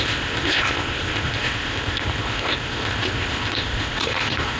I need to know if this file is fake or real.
fake